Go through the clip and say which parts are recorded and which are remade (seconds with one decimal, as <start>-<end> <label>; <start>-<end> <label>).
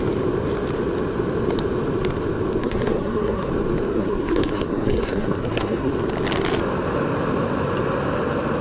0.0-2.6 recorded; 2.6-3.5 remade; 3.5-3.9 recorded; 3.9-5.9 remade; 5.9-8.6 recorded